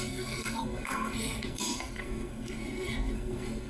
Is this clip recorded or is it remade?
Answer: remade